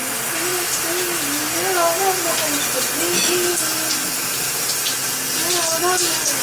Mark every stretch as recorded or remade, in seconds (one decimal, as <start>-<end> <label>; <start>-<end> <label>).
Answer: 0.0-6.4 recorded